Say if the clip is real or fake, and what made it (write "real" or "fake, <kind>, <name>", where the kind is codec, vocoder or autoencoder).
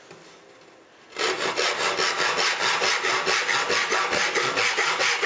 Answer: real